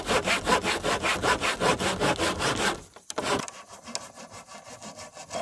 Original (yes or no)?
yes